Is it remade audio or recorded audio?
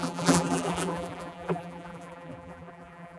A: remade